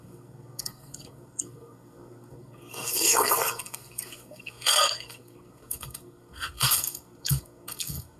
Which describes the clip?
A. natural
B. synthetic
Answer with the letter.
B